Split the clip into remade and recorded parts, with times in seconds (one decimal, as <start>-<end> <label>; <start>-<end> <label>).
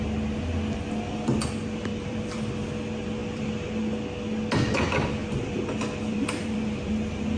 0.0-1.9 recorded; 1.9-2.5 remade; 2.5-3.2 recorded; 3.2-3.8 remade; 3.8-5.2 recorded; 5.2-6.9 remade; 6.9-7.4 recorded